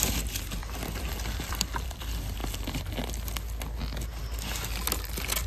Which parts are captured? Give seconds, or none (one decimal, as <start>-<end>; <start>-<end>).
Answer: 0.0-0.6; 2.0-5.5